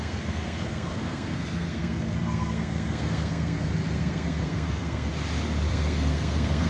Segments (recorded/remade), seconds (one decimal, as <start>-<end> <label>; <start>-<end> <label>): 0.0-5.1 remade; 5.1-5.7 recorded; 5.7-6.7 remade